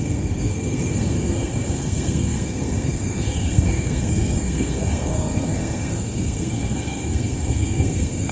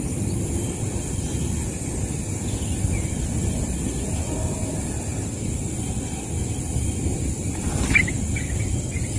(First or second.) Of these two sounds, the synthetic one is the first